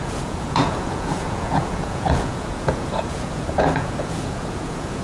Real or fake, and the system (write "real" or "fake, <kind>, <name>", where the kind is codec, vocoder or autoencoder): fake, vocoder, Vocos